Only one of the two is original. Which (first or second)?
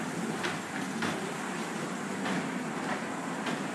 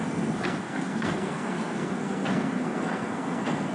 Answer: first